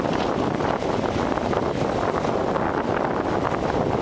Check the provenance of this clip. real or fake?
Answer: real